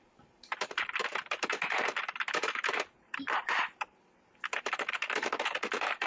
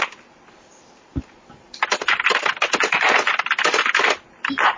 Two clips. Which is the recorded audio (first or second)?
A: second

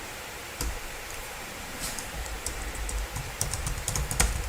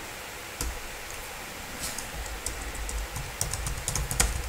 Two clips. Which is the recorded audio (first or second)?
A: second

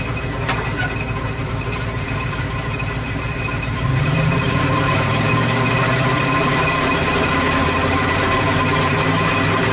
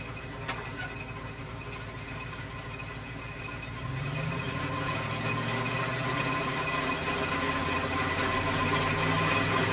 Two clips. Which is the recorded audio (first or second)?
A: second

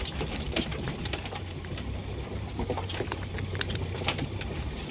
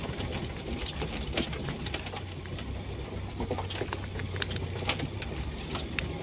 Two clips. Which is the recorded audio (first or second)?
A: second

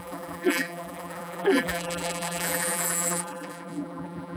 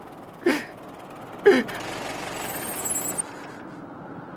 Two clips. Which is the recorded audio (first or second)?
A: second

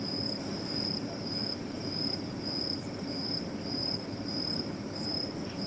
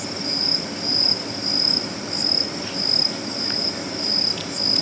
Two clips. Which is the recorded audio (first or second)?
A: second